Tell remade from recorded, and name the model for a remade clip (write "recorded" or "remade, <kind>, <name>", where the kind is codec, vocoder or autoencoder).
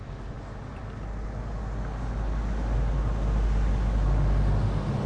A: recorded